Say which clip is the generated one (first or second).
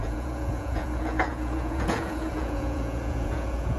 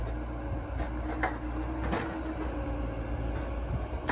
first